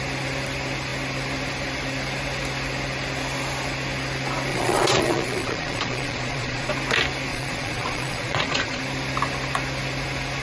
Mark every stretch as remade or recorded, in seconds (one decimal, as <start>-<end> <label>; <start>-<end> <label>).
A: 0.0-4.5 recorded; 4.5-6.7 remade; 6.7-7.3 recorded; 7.3-8.8 remade; 8.8-10.4 recorded